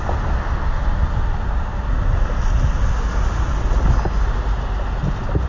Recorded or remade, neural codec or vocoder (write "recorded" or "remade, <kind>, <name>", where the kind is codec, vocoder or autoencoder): recorded